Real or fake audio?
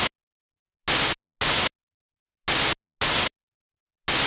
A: real